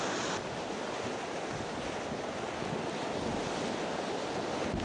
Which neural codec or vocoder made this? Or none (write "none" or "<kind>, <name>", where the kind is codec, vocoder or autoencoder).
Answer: none